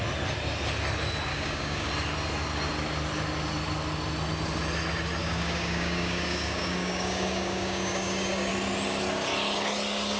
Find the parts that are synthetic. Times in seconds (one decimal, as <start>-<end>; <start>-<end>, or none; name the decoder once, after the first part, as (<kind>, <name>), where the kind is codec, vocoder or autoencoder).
1.3-1.9 (codec, DAC); 5.2-8.5